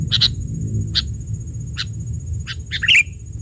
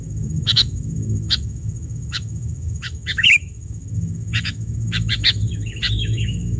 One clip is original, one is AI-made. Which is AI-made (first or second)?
second